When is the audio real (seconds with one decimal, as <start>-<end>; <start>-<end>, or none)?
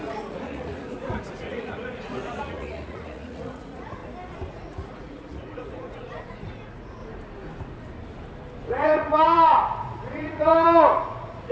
4.0-4.5; 7.0-8.7